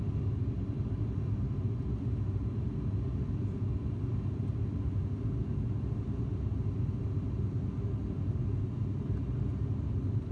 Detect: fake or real real